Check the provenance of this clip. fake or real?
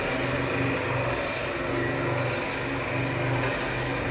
real